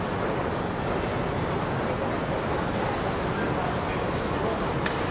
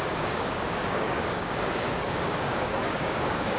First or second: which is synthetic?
second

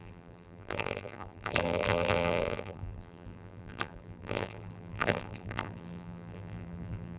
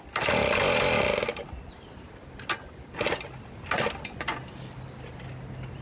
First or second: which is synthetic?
first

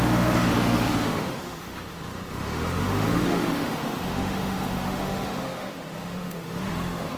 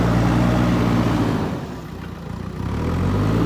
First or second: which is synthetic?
first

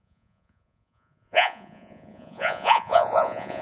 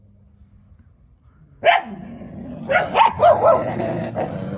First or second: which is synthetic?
first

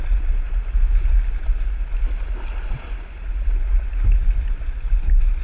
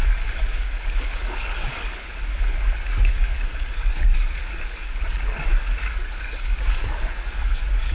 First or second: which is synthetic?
second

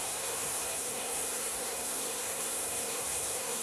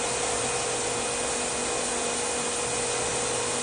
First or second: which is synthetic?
first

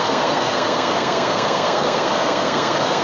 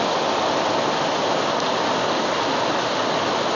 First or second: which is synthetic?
first